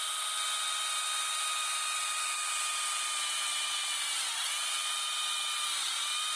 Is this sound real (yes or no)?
yes